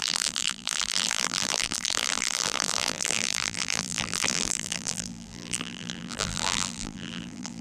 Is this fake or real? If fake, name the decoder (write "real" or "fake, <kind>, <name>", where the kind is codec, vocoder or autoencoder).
fake, vocoder, BigVGAN v2